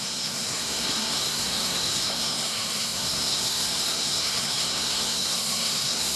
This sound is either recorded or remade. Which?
remade